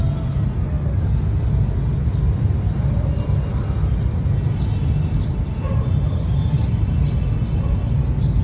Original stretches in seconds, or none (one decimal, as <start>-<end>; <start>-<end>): 0.0-8.4